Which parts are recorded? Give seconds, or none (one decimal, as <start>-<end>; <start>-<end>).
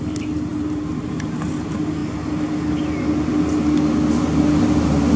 0.0-5.2